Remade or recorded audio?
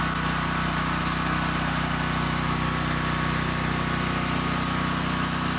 recorded